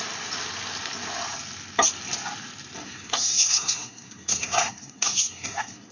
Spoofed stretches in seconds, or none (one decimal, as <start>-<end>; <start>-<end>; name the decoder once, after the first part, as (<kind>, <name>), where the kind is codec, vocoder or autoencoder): 2.8-5.9 (codec, SNAC)